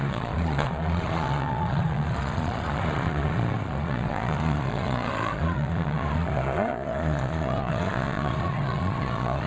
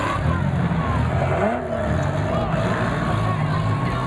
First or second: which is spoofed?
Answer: first